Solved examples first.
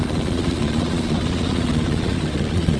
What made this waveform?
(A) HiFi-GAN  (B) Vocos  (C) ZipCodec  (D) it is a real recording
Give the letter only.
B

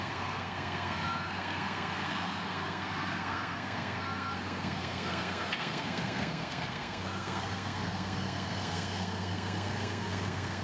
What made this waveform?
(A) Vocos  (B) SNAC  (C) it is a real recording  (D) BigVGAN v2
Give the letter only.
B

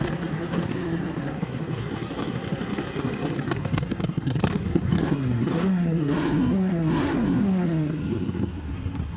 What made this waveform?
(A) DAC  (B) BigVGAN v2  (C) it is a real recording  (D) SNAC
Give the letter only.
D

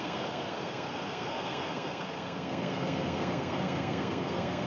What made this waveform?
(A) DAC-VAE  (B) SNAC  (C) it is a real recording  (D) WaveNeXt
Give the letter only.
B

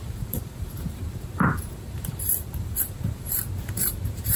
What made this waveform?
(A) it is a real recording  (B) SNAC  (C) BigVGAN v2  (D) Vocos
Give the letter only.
C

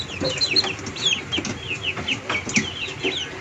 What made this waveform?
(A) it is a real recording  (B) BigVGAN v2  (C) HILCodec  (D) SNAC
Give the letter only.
A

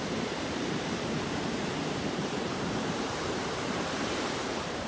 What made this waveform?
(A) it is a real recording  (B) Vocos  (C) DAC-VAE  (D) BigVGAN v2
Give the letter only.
D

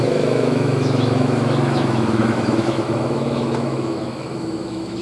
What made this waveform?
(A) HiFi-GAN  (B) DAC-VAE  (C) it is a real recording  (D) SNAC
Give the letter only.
B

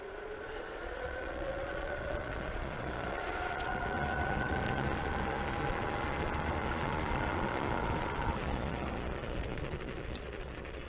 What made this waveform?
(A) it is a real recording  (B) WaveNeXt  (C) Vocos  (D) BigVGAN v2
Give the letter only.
C